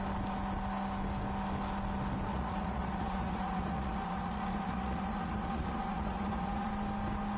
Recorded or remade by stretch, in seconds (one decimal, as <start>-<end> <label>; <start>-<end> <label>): 0.0-2.3 recorded; 2.3-6.7 remade; 6.7-7.4 recorded